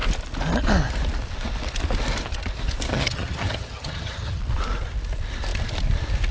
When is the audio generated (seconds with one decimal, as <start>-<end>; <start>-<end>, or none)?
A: 2.9-4.4